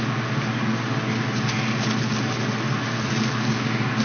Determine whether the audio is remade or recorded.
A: recorded